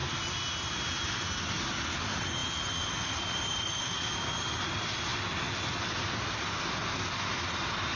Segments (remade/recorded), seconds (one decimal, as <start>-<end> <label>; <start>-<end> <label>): 0.0-8.0 recorded